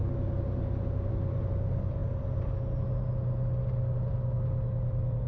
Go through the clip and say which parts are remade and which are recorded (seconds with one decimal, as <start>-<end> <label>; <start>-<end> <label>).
0.0-5.3 recorded